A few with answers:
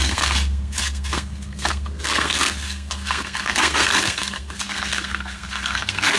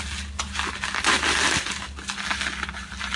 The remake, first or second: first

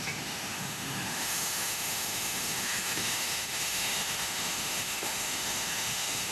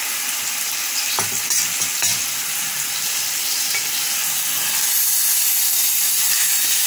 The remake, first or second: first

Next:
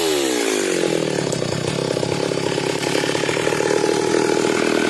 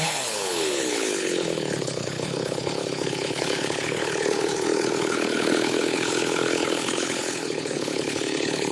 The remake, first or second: second